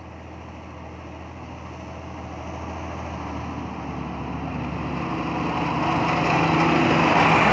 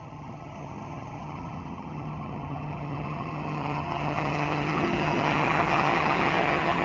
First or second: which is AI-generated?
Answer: second